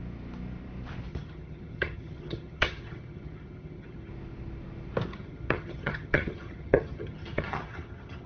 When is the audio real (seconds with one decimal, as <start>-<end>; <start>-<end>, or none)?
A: 0.0-1.1; 4.1-5.1